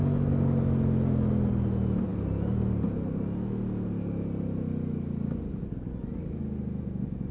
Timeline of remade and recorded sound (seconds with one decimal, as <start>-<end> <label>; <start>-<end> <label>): 0.0-7.3 recorded

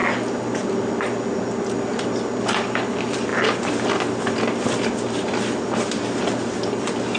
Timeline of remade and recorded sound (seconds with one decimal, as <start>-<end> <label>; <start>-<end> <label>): 0.0-7.2 recorded

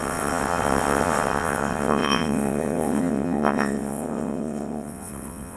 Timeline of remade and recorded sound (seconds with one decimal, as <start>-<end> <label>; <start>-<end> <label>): 0.0-5.6 remade

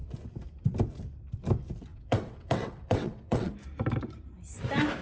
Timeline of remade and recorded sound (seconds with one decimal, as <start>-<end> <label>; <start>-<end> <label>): 0.0-1.9 recorded; 1.9-3.5 remade; 3.5-5.0 recorded